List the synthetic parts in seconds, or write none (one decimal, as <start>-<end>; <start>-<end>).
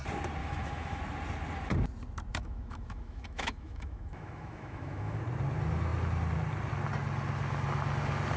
0.4-1.0; 2.3-5.2